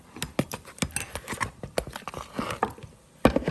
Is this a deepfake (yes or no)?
no